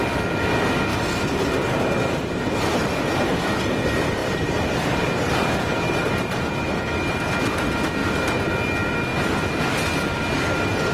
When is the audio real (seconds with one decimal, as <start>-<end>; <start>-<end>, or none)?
0.0-0.9; 2.4-4.2; 6.8-8.0; 8.5-10.9